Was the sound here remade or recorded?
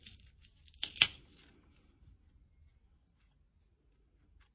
recorded